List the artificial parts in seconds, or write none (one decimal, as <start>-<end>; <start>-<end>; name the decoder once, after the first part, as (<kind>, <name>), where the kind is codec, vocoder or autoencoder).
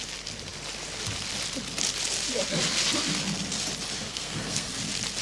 4.1-4.7 (codec, SNAC)